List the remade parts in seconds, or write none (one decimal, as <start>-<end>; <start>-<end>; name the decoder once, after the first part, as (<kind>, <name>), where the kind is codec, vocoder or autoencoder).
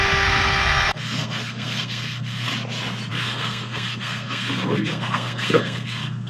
0.0-2.5 (codec, SNAC); 3.1-6.3